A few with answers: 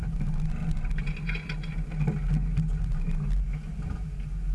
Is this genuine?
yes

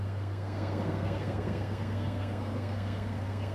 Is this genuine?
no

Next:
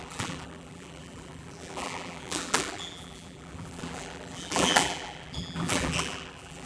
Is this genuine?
no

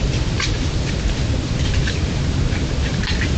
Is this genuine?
yes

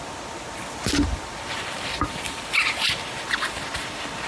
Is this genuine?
yes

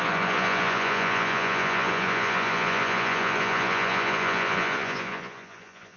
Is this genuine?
no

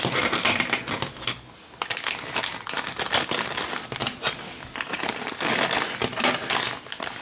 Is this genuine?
yes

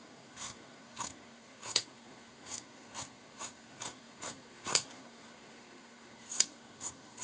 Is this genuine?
no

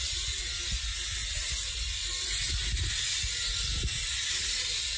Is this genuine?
yes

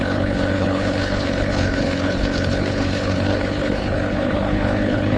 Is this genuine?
no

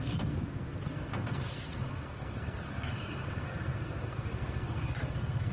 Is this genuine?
no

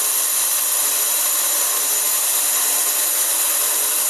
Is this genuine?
yes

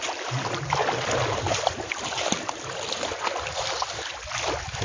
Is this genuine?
yes